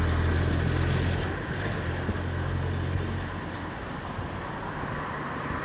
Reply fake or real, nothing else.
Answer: real